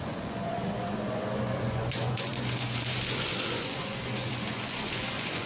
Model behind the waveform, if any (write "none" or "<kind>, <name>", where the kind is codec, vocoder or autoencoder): vocoder, Vocos